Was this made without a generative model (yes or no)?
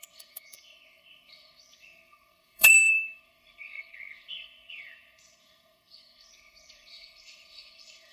no